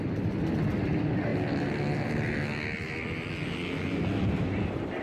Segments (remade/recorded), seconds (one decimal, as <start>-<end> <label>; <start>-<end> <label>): 0.0-5.0 recorded